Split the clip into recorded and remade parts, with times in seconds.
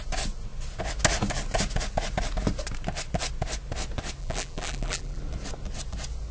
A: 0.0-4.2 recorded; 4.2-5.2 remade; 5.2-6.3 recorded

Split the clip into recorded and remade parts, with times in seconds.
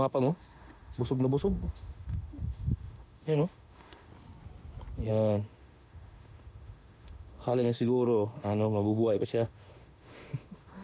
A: 0.0-4.1 remade; 4.1-5.1 recorded; 5.1-10.8 remade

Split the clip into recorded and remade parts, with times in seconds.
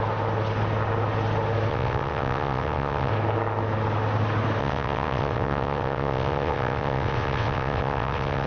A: 0.0-1.7 recorded; 1.7-3.1 remade; 3.1-4.6 recorded; 4.6-8.5 remade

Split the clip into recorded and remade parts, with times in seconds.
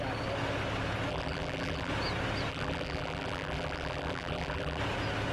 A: 0.0-1.1 recorded; 1.1-1.9 remade; 1.9-2.5 recorded; 2.5-4.8 remade; 4.8-5.3 recorded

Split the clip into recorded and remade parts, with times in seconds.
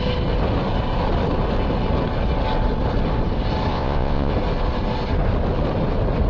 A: 0.0-3.7 recorded; 3.7-4.3 remade; 4.3-6.3 recorded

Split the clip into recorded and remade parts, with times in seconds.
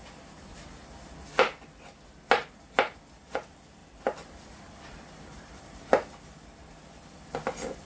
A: 0.0-3.8 recorded; 3.8-5.6 remade; 5.6-7.8 recorded